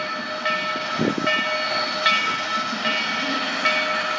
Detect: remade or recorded recorded